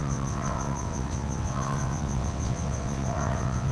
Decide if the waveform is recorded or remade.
remade